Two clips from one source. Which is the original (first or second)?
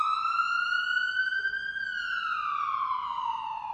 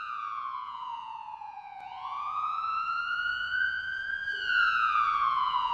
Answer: first